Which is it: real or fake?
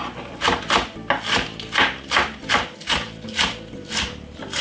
real